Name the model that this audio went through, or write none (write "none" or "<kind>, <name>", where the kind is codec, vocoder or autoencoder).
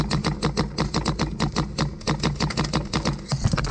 none